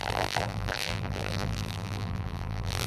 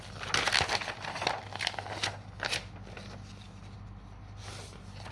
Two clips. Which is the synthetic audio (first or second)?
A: first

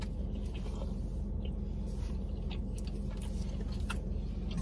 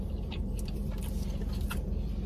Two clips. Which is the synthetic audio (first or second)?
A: second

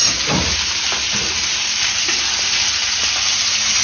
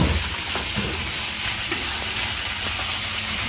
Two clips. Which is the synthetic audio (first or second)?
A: second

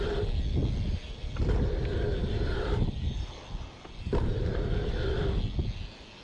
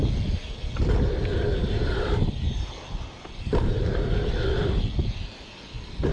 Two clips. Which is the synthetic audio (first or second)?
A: second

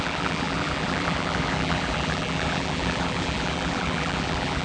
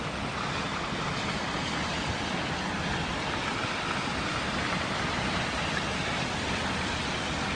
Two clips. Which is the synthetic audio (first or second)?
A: first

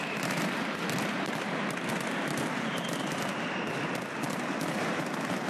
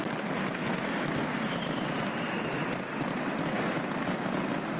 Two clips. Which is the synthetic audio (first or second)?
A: first